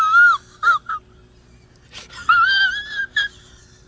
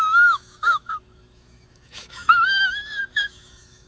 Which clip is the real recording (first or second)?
first